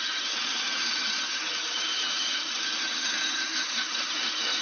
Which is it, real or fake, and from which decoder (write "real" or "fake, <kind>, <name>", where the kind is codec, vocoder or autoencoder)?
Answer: fake, vocoder, HiFi-GAN